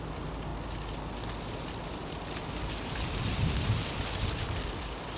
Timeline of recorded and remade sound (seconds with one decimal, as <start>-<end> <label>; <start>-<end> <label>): 0.0-5.2 recorded